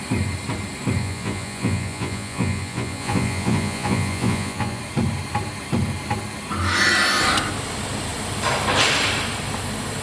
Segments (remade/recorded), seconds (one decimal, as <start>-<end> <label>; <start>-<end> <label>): 0.0-1.0 recorded; 1.0-4.8 remade; 4.8-10.0 recorded

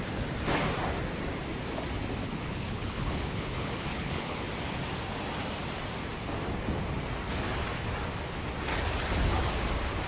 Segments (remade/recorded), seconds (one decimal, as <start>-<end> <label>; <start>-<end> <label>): 0.0-2.2 recorded; 2.2-4.5 remade; 4.5-10.1 recorded

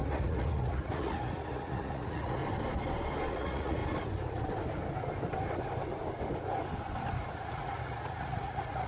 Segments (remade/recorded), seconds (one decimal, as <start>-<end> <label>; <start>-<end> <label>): 0.0-2.4 remade; 2.4-3.3 recorded; 3.3-3.8 remade; 3.8-7.3 recorded; 7.3-8.9 remade